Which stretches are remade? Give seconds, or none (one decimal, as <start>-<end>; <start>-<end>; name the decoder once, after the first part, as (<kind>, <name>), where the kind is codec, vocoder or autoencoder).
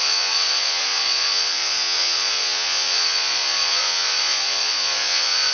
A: 0.0-5.5 (vocoder, Vocos)